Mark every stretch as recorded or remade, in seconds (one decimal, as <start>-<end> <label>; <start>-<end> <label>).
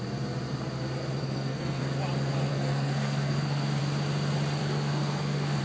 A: 0.0-1.2 recorded; 1.2-1.8 remade; 1.8-2.5 recorded; 2.5-3.8 remade; 3.8-4.6 recorded; 4.6-5.6 remade